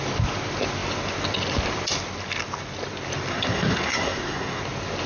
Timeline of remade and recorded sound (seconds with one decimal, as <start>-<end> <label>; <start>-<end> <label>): 0.0-3.3 recorded; 3.3-4.6 remade; 4.6-5.1 recorded